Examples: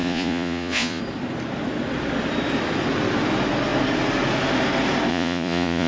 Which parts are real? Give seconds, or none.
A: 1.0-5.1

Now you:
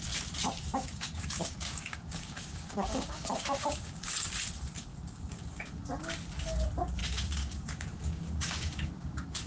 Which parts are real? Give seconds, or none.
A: 0.0-0.7; 4.3-4.9; 5.9-7.0

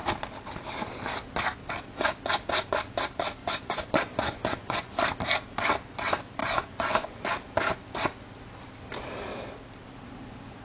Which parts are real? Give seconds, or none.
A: 0.0-3.4; 5.0-6.4; 7.3-10.6

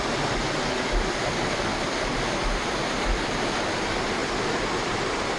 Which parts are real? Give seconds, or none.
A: 0.0-5.4